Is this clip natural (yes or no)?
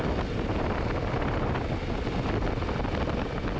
yes